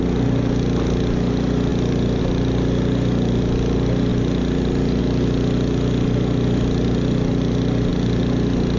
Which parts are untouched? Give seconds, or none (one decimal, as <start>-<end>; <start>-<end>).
0.0-8.8